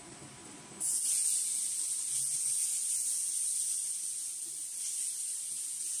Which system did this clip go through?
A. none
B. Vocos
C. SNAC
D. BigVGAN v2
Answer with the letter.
A